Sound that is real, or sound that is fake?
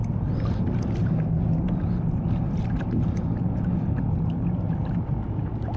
real